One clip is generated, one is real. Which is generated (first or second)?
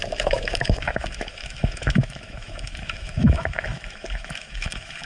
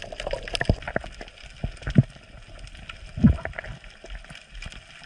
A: first